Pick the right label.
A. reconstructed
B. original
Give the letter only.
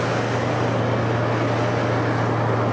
B